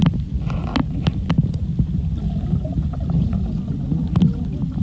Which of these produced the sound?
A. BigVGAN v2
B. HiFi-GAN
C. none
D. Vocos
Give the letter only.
C